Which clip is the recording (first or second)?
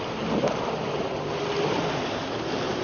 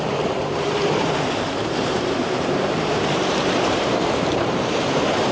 first